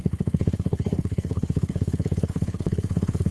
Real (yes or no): no